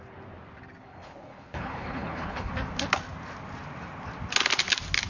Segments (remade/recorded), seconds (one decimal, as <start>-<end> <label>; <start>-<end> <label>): 0.0-0.8 recorded; 0.8-2.5 remade; 2.5-5.1 recorded